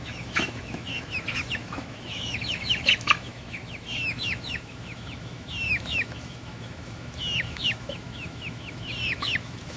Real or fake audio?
fake